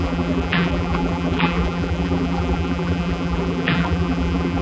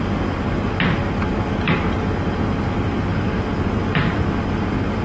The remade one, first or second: first